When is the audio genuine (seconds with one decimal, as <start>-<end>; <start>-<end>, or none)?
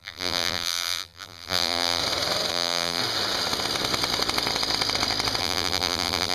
2.0-2.5; 3.0-5.4